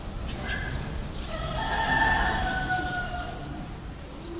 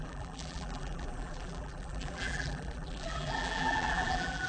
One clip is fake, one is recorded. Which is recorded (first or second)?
first